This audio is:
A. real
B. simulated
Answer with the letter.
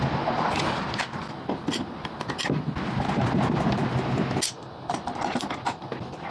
A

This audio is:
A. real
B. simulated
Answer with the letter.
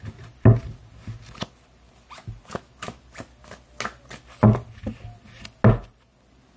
A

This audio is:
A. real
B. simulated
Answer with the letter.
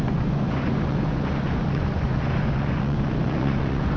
B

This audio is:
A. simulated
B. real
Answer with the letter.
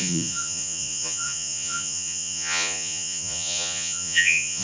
A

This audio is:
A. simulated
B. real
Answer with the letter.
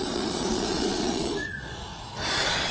A